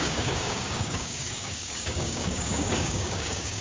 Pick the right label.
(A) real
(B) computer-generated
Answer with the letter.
B